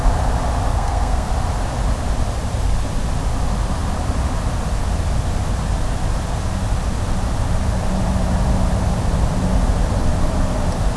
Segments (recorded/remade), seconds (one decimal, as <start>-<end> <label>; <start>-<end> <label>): 0.0-0.7 recorded; 0.7-1.3 remade; 1.3-11.0 recorded